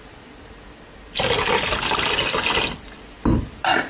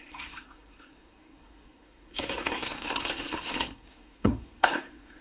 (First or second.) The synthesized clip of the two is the second